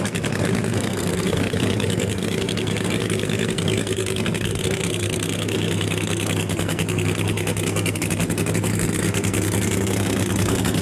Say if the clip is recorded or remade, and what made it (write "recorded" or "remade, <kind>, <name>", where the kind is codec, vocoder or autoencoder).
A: remade, codec, SNAC